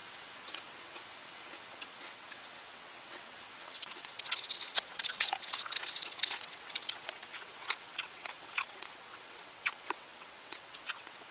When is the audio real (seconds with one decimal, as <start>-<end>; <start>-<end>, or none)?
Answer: none